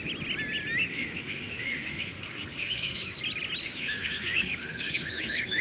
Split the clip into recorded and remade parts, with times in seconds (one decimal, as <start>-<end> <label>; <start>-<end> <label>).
0.0-0.9 recorded; 0.9-3.2 remade; 3.2-3.6 recorded; 3.6-5.6 remade